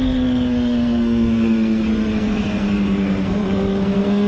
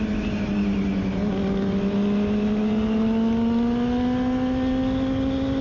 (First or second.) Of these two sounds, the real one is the second